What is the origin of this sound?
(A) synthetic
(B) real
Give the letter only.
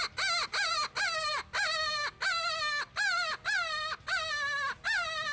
B